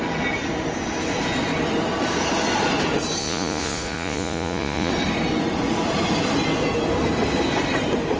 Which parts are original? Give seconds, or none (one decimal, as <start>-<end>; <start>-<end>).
0.0-3.2; 4.9-8.2